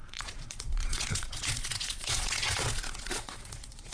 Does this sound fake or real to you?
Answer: fake